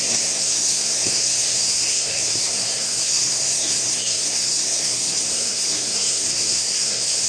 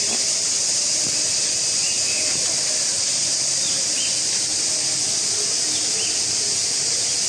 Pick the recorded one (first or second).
second